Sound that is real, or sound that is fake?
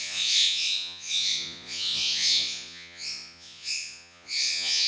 fake